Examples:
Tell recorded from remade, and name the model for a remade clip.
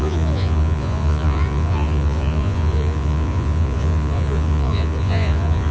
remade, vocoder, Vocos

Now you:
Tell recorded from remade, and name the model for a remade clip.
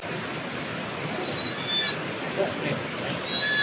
recorded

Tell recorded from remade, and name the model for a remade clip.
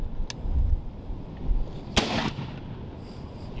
recorded